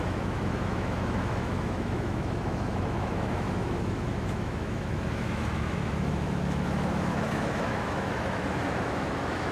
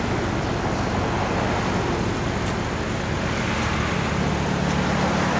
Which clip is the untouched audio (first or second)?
second